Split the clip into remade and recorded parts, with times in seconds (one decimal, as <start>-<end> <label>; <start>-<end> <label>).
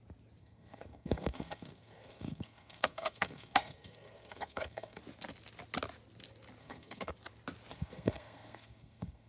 0.0-0.4 recorded; 0.4-5.0 remade; 5.0-6.6 recorded; 6.6-7.1 remade; 7.1-7.7 recorded; 7.7-9.3 remade